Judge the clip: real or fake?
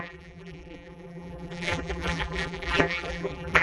fake